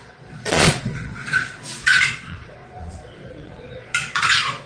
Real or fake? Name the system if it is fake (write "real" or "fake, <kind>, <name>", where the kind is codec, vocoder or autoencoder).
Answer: fake, vocoder, Vocos